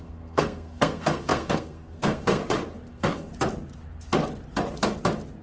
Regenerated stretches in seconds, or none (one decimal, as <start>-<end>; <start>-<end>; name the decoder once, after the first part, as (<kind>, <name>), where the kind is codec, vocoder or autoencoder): 0.0-2.4 (codec, SNAC); 2.9-3.3